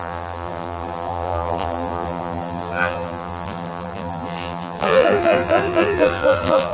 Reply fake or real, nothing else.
fake